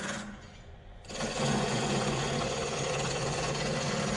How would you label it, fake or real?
fake